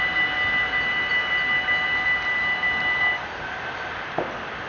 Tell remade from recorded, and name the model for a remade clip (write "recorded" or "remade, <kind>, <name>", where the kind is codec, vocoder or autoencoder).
recorded